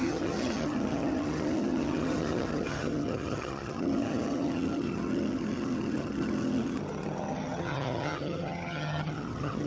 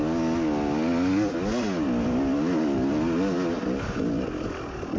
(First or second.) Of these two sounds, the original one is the second